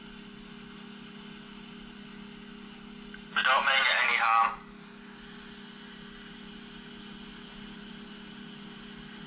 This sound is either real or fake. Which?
real